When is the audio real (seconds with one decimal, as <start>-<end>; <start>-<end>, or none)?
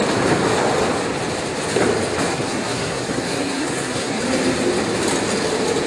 0.0-2.3; 4.2-5.9